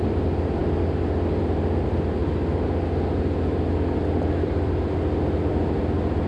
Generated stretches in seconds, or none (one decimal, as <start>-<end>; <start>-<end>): 0.0-0.6; 1.4-2.2; 4.3-6.3